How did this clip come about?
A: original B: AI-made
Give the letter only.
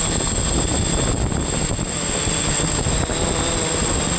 A